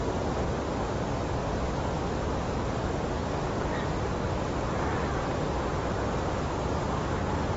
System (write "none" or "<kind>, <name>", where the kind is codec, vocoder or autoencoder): none